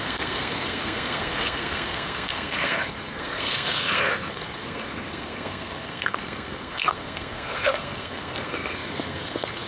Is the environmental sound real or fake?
fake